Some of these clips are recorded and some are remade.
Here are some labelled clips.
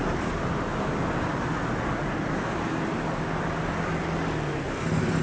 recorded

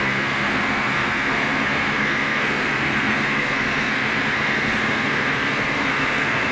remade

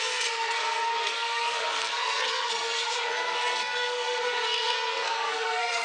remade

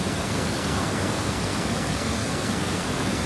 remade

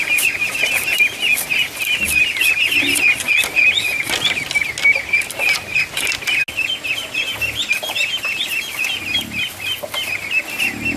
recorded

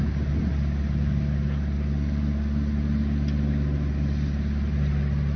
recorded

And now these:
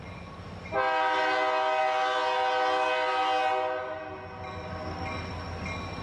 recorded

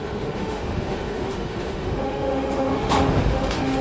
remade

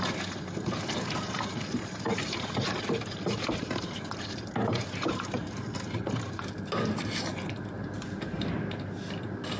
recorded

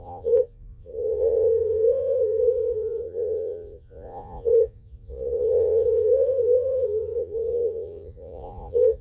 remade